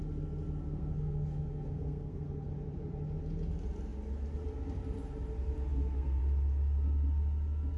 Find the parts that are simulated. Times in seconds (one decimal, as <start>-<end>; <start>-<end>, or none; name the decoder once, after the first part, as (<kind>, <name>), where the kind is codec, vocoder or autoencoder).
0.6-2.5 (codec, SNAC); 5.7-6.2